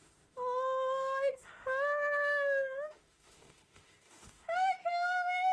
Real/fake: fake